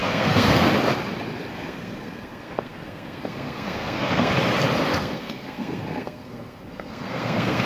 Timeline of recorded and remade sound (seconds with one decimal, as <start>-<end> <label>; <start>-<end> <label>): 0.0-0.7 remade; 0.7-1.5 recorded; 1.5-4.3 remade; 4.3-4.9 recorded; 4.9-7.7 remade